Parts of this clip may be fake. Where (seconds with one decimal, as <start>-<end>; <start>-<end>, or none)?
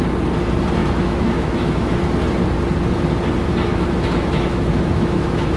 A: 0.8-2.0; 3.7-5.6